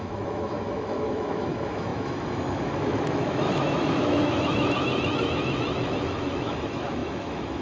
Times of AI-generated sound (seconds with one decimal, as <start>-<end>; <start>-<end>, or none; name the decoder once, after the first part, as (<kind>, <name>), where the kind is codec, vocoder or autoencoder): 0.0-7.6 (autoencoder, DAC-VAE)